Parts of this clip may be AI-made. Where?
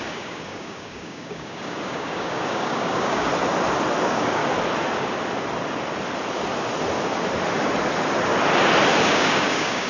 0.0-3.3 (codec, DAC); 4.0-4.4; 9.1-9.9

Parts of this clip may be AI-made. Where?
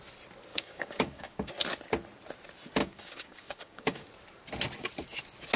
0.5-1.5 (codec, DAC); 2.8-4.1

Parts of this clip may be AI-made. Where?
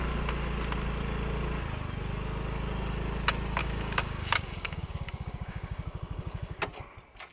3.6-6.6 (codec, DAC)